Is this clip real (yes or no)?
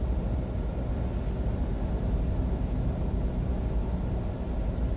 yes